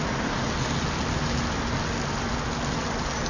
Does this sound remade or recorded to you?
recorded